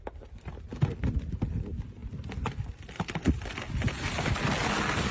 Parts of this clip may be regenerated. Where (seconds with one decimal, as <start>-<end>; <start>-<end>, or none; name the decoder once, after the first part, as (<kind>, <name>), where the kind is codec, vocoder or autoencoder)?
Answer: none